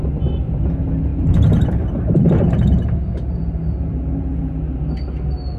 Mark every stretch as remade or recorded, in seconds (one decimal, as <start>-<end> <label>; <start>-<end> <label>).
0.0-1.1 recorded; 1.1-4.5 remade; 4.5-5.6 recorded